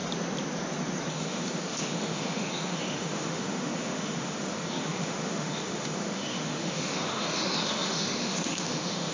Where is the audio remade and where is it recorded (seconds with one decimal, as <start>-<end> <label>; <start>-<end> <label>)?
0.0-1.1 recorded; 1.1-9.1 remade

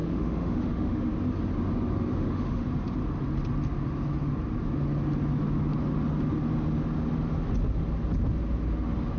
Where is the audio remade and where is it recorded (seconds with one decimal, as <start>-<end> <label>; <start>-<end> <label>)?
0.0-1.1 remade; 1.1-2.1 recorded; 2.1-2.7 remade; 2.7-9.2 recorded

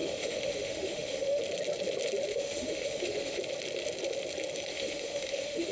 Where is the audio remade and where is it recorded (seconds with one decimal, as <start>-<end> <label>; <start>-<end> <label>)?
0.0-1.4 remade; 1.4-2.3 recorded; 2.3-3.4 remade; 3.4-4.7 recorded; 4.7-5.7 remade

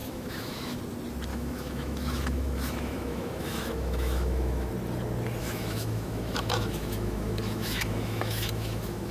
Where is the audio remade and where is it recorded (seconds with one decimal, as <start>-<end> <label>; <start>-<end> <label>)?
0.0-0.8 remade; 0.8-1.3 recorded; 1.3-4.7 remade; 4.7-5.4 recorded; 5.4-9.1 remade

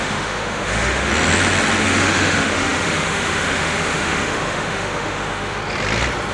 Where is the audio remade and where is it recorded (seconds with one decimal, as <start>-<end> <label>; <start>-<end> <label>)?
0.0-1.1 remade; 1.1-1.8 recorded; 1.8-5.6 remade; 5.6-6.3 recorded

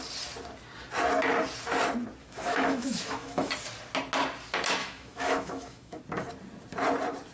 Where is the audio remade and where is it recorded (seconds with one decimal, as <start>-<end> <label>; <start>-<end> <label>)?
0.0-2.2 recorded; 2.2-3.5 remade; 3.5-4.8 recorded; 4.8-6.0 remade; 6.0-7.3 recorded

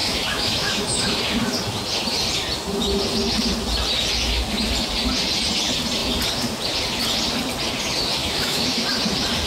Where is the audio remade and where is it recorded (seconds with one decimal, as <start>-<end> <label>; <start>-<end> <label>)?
0.0-1.2 remade; 1.2-8.2 recorded; 8.2-8.8 remade; 8.8-9.5 recorded